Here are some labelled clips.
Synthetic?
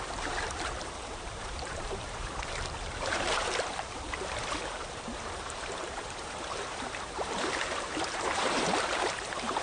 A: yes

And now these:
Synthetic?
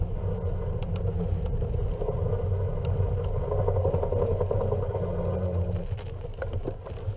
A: no